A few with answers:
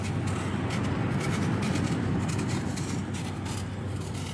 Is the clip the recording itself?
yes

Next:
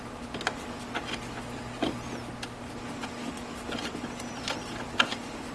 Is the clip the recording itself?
yes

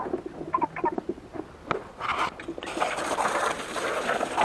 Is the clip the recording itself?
yes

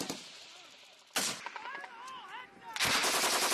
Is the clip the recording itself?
yes